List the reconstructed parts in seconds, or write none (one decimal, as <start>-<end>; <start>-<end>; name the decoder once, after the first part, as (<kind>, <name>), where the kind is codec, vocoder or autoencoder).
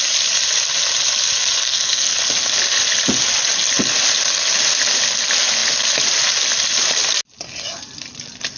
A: 1.6-2.1 (codec, SNAC)